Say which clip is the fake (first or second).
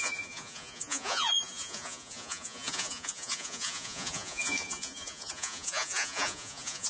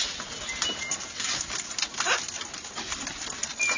first